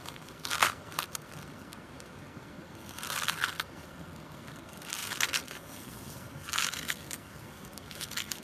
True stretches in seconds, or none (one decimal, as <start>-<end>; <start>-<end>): none